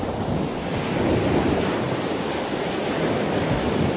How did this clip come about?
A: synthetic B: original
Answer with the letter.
B